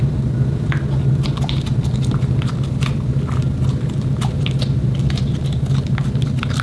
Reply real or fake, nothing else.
real